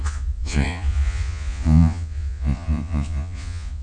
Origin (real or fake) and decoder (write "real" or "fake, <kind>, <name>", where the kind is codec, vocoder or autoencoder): fake, vocoder, Vocos